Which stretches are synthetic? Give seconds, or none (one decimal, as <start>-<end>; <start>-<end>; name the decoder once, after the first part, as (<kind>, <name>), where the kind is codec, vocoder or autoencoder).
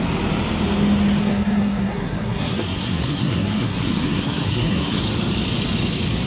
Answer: 1.2-5.0 (codec, SNAC)